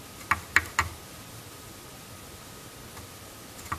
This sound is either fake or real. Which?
real